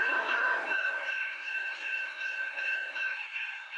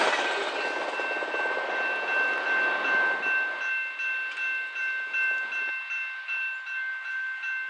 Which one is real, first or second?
second